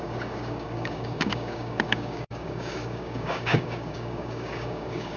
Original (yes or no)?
no